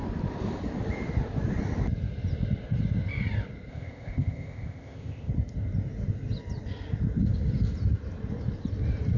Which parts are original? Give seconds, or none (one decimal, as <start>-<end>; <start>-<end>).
0.0-3.7; 5.3-9.2